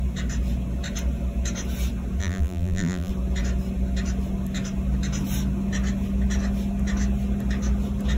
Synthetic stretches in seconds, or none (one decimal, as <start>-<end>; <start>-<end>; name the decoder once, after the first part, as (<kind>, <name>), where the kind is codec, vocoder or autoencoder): 2.2-3.1 (vocoder, BigVGAN v2)